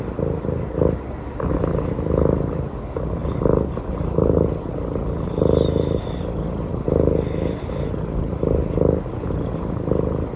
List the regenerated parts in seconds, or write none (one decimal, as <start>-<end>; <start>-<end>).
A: 3.2-4.6